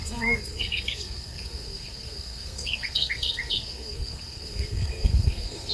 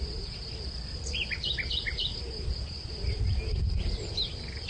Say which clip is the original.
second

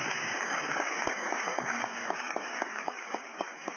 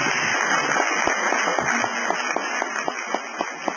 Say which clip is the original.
second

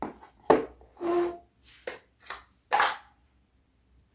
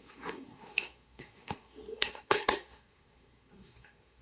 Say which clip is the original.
first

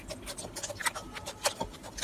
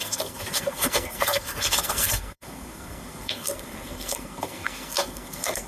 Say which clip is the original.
first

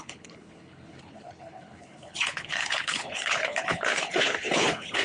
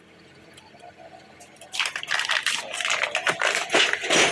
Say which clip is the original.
second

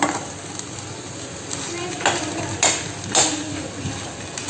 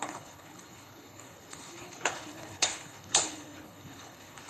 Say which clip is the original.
first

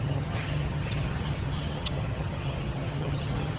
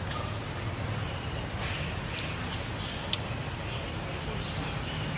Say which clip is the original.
second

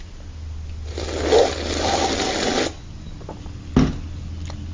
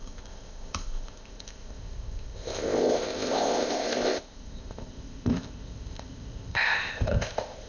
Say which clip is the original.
first